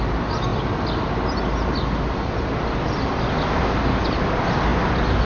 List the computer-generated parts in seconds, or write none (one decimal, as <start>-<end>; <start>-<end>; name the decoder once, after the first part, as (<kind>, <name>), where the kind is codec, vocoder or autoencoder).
none